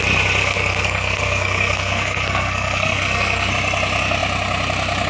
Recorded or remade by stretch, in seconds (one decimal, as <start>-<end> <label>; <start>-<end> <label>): 0.0-0.4 recorded; 0.4-3.5 remade; 3.5-5.1 recorded